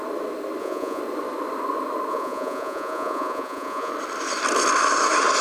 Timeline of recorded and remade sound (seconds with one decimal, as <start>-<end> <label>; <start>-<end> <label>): 0.0-0.6 recorded; 0.6-1.0 remade; 1.0-2.1 recorded; 2.1-3.9 remade; 3.9-5.4 recorded